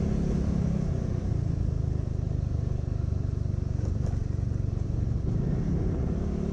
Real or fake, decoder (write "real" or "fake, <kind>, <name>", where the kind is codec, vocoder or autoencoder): real